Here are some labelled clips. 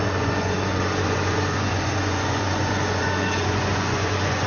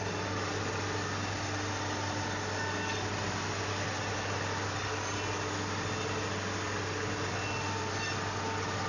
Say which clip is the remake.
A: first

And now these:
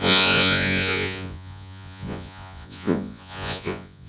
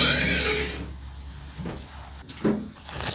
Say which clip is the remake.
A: first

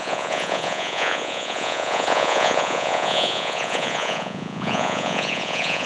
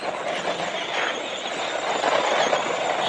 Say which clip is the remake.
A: first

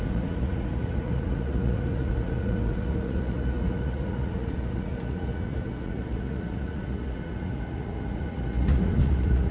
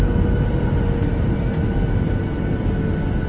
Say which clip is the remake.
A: first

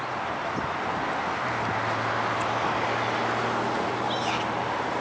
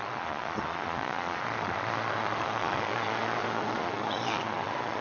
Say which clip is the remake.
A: second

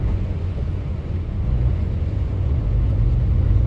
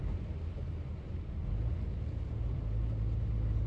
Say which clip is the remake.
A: first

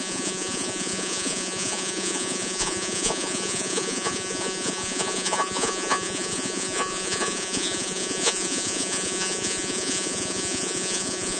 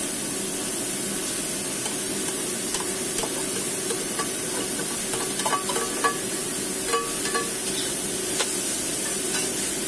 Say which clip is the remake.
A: first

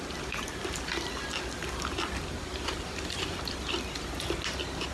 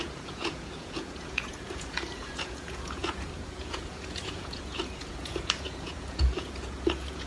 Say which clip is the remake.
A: second